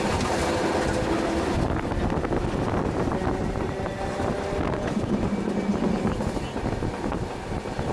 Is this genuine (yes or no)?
yes